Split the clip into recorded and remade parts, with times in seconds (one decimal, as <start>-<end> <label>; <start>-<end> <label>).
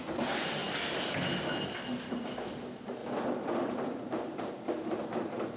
0.0-3.0 recorded; 3.0-4.3 remade; 4.3-5.6 recorded